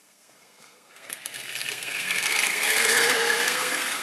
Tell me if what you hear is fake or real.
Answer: fake